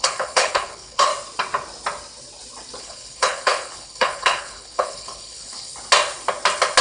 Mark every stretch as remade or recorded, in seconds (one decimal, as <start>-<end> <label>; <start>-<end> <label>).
0.0-1.1 remade; 1.1-2.8 recorded; 2.8-5.7 remade; 5.7-6.8 recorded